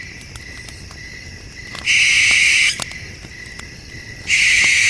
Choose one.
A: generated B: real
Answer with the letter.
B